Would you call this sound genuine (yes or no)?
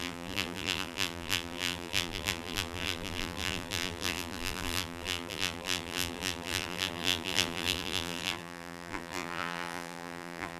no